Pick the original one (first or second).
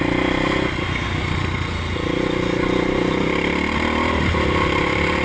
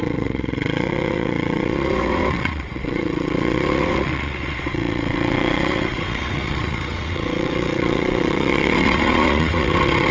first